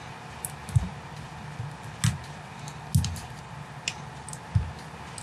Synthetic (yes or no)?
no